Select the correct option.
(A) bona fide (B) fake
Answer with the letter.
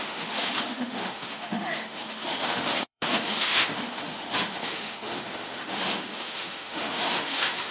B